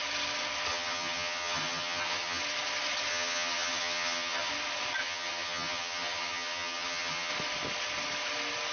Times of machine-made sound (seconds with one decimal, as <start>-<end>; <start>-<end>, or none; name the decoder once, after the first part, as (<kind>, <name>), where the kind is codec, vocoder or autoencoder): 0.7-2.4 (vocoder, HiFi-GAN); 3.1-4.5; 5.0-7.3